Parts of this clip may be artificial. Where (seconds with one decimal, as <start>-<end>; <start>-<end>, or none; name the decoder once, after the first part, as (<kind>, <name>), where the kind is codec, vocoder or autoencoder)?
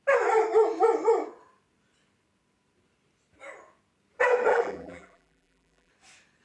4.5-5.9 (vocoder, BigVGAN v2)